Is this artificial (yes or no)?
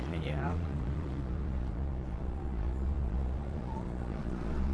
yes